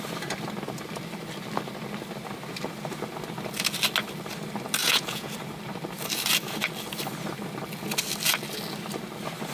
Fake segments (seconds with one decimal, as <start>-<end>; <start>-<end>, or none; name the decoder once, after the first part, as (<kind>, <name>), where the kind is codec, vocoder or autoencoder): 4.8-5.3 (vocoder, Vocos)